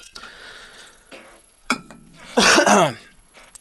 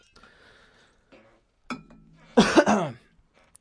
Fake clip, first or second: first